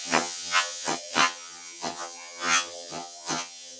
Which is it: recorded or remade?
remade